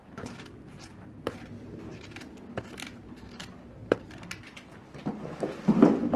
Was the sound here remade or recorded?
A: recorded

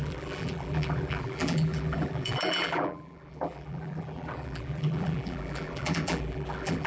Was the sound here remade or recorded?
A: remade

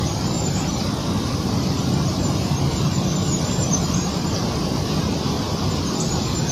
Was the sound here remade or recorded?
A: recorded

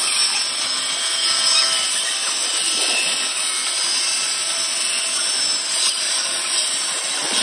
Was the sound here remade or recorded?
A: recorded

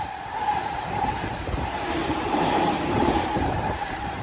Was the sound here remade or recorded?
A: remade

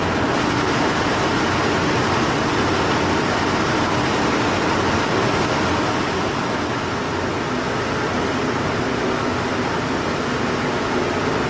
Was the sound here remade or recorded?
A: recorded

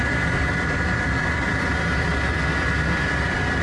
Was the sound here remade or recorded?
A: remade